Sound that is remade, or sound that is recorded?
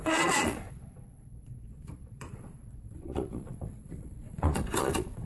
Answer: remade